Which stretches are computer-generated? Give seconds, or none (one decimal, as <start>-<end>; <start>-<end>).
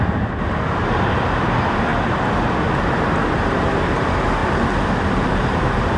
0.0-1.9; 3.3-4.4; 4.9-6.0